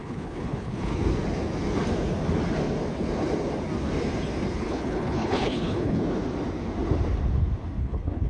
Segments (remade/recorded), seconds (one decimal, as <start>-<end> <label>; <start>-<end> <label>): 0.0-0.9 remade; 0.9-4.6 recorded; 4.6-6.0 remade; 6.0-7.8 recorded; 7.8-8.3 remade